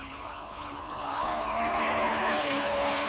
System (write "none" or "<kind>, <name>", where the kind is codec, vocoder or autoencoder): codec, HILCodec